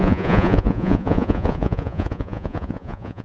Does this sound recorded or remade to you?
remade